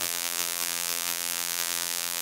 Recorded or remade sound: remade